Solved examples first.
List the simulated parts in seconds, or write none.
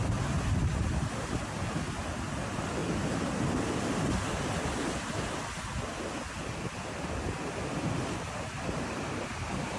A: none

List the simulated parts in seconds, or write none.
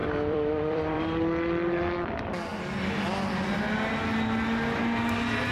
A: 0.0-1.0 (vocoder, BigVGAN v2)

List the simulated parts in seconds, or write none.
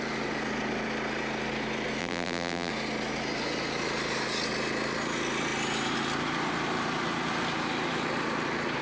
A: 2.0-2.7 (vocoder, BigVGAN v2)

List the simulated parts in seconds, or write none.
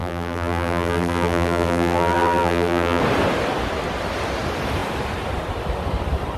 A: 0.0-3.0 (vocoder, BigVGAN v2)